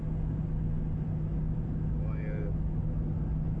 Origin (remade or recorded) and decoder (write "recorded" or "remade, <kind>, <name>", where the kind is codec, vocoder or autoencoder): recorded